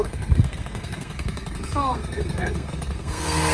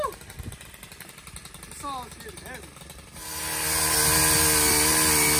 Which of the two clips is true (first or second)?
second